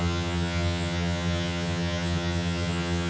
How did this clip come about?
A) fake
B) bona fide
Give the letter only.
A